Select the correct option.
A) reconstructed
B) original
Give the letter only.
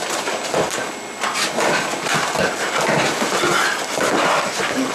B